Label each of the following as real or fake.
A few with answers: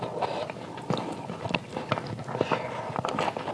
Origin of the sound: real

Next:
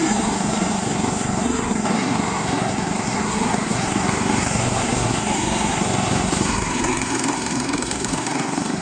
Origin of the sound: fake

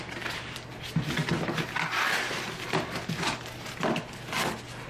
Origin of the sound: real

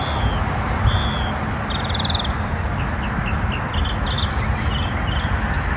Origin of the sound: real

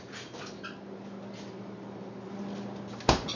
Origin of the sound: real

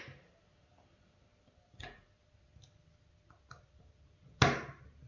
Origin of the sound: real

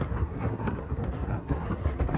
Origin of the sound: fake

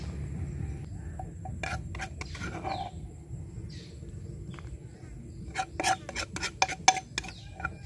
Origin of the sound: real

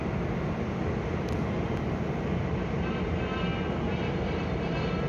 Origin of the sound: real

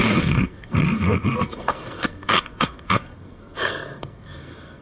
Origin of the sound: fake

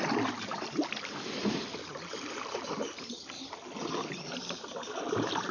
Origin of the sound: real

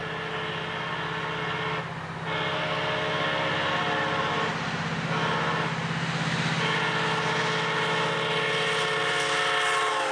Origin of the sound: real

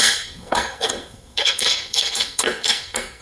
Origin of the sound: fake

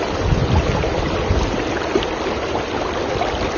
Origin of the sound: real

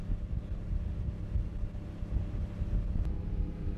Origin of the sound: real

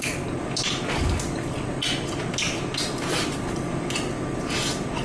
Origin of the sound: real